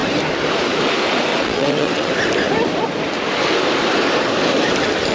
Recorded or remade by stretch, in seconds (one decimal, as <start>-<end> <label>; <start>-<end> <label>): 0.0-1.3 recorded; 1.3-2.1 remade; 2.1-5.1 recorded